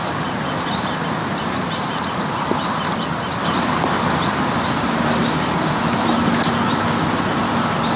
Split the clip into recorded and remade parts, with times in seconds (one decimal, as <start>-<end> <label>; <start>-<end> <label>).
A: 0.0-8.0 recorded